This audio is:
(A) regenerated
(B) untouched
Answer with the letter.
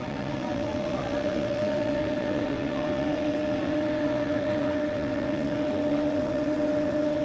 A